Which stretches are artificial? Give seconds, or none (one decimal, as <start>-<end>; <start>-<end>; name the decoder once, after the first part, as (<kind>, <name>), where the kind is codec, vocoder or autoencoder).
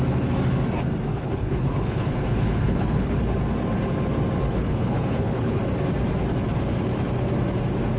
1.1-3.2 (codec, HILCodec); 4.5-5.6